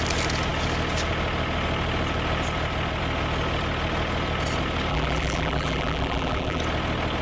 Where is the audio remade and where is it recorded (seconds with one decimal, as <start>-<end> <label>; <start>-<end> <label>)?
0.0-4.9 recorded; 4.9-6.6 remade; 6.6-7.2 recorded